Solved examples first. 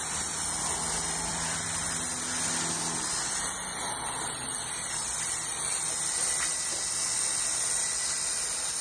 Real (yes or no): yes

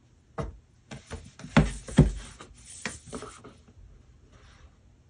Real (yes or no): yes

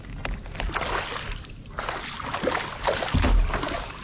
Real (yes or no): yes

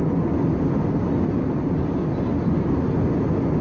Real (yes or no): yes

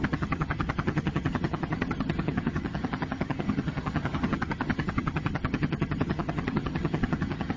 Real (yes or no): no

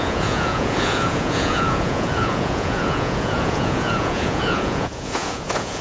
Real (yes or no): no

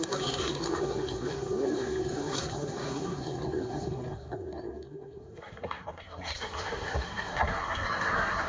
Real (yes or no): no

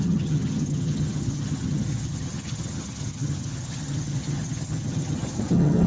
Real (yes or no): no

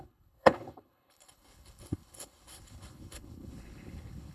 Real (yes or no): no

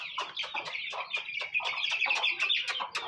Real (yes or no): yes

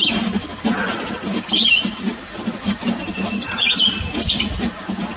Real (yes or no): yes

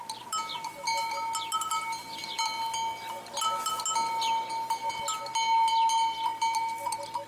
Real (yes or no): yes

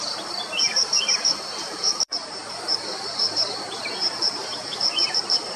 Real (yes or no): no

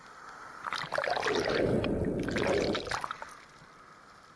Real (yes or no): yes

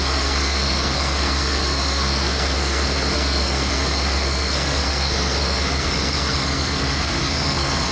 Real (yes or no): no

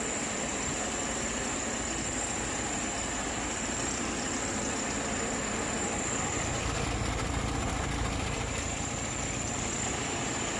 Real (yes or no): no